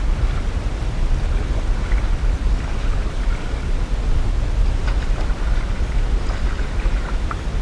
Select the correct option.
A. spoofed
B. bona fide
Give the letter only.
A